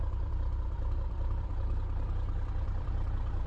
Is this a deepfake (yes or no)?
yes